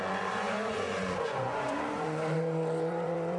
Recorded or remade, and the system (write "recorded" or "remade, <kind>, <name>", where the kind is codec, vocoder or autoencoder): remade, vocoder, Vocos